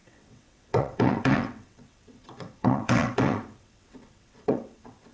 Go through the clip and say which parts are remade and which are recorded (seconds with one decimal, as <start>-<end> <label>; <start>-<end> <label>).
0.0-5.1 remade